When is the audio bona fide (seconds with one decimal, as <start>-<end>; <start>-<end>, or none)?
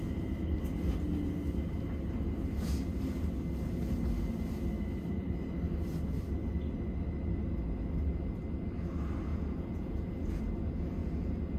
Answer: 0.0-9.3; 10.4-11.0